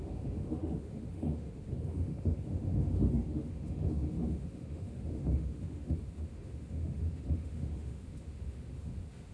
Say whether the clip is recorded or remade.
remade